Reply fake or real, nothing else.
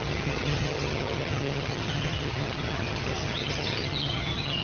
fake